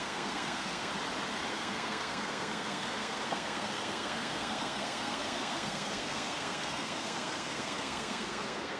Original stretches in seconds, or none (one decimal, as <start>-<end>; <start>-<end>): 0.9-1.5